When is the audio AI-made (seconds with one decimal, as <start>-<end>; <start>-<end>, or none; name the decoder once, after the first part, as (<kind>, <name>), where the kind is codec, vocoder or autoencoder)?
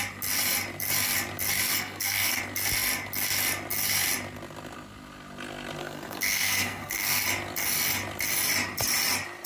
1.7-2.4 (codec, SNAC); 5.8-7.2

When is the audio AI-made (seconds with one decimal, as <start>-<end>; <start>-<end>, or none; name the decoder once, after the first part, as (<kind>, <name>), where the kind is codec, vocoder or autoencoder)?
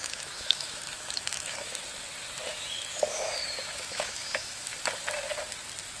0.0-1.8 (autoencoder, DAC-VAE); 2.5-4.7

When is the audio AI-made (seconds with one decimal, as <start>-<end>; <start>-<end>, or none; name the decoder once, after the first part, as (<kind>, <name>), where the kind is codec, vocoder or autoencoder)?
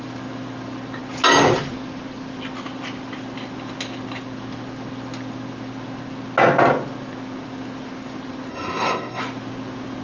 8.5-9.2 (codec, SNAC)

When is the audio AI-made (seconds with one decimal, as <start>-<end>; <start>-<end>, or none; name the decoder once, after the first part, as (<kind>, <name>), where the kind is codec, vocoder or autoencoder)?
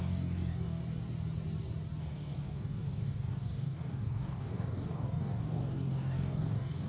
0.0-0.8 (codec, DAC); 2.0-6.9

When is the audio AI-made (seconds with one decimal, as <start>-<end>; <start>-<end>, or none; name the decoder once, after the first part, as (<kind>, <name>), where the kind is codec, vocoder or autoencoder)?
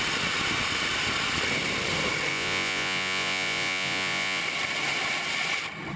2.3-4.4 (vocoder, Vocos)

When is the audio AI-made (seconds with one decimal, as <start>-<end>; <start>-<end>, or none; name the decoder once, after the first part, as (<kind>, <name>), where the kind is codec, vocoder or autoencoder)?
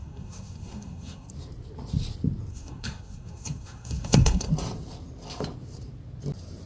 0.0-1.3 (codec, SNAC); 2.5-4.5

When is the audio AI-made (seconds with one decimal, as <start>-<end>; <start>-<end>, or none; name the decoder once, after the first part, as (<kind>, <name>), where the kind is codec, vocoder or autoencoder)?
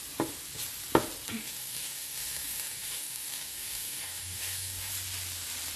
1.4-4.9 (codec, DAC)